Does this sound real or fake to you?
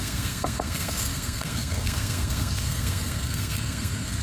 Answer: fake